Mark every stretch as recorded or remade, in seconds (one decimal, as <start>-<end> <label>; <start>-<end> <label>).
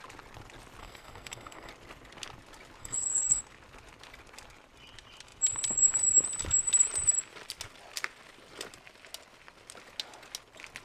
0.0-0.8 recorded; 0.8-1.7 remade; 1.7-2.8 recorded; 2.8-3.4 remade; 3.4-10.8 recorded